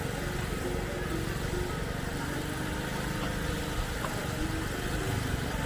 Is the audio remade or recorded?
recorded